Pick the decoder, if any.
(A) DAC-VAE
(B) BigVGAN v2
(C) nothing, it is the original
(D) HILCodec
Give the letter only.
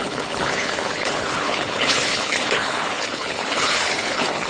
D